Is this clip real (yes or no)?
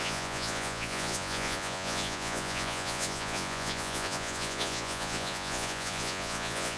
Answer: no